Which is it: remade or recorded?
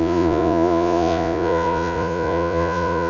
remade